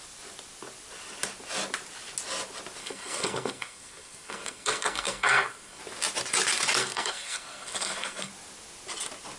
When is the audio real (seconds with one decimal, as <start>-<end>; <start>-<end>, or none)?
0.0-2.8; 5.8-6.8; 8.3-9.4